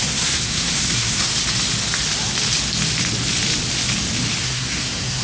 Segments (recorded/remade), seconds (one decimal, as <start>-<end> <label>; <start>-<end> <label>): 0.0-1.3 remade; 1.3-4.4 recorded; 4.4-5.2 remade